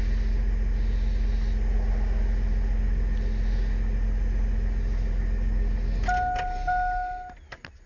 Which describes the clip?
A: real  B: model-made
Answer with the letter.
A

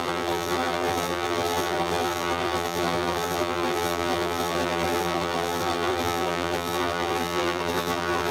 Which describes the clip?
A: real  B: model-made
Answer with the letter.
B